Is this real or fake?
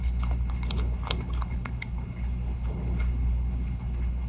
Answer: fake